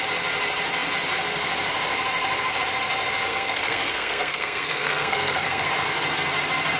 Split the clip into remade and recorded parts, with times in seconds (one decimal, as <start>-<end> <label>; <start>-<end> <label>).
0.0-3.3 recorded; 3.3-5.7 remade; 5.7-6.8 recorded